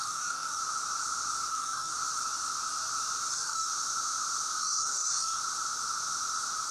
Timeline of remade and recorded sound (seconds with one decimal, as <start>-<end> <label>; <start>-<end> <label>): 0.0-0.6 remade; 0.6-1.5 recorded; 1.5-1.9 remade; 1.9-3.3 recorded; 3.3-3.7 remade; 3.7-4.6 recorded; 4.6-5.4 remade; 5.4-6.7 recorded